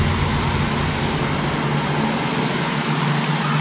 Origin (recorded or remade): recorded